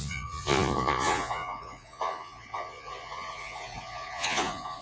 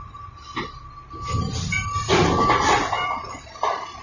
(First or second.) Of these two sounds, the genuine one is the second